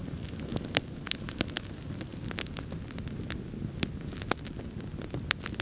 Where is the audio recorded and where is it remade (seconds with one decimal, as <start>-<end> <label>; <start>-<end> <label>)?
0.0-5.6 recorded